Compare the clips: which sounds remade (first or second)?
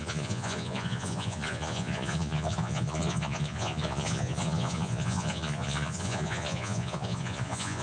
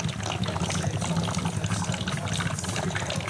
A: first